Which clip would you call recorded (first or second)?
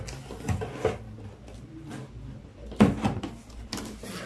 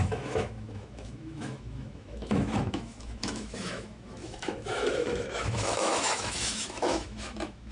first